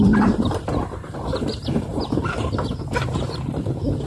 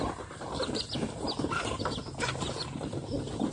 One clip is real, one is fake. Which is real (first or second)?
second